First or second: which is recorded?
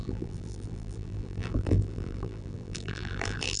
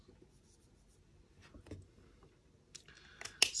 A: second